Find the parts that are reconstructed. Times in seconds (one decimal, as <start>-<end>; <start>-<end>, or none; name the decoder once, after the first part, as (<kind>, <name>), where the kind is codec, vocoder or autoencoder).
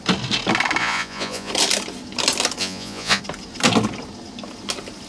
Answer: 0.8-1.5 (vocoder, Vocos); 2.6-3.2